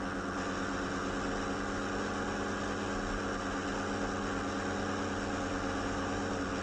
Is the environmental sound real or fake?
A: real